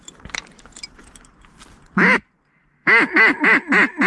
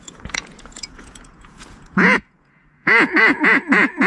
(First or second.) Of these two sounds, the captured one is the first